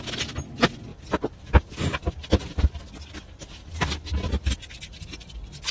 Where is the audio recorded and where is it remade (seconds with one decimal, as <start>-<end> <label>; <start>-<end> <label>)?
0.0-5.7 recorded